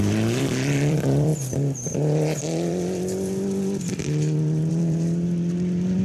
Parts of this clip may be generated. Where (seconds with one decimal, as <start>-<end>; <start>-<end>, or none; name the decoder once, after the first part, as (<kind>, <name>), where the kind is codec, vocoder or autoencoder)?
0.0-1.3 (vocoder, BigVGAN v2); 2.4-4.0; 4.7-6.0